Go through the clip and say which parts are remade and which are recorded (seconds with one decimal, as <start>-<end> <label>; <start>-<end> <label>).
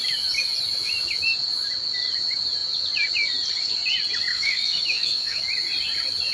0.0-4.3 recorded; 4.3-5.4 remade; 5.4-6.3 recorded